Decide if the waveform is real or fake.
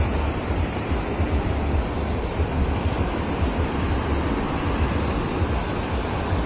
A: real